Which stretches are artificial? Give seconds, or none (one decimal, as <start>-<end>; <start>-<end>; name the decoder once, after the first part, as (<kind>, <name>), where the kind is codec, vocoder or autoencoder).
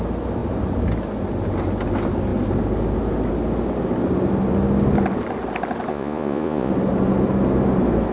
5.9-6.7 (vocoder, Vocos)